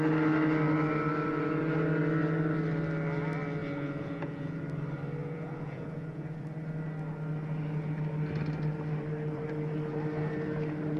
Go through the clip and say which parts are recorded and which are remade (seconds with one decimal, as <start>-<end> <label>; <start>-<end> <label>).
0.0-3.6 recorded; 3.6-4.6 remade; 4.6-5.2 recorded; 5.2-6.4 remade; 6.4-11.0 recorded